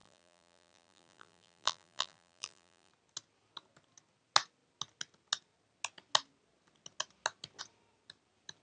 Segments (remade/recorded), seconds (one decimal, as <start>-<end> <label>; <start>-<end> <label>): 0.0-2.9 remade; 2.9-8.6 recorded